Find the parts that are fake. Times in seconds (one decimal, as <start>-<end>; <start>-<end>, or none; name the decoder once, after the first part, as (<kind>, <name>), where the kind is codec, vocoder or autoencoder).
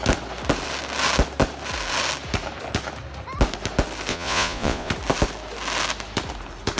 4.1-4.9 (vocoder, Vocos)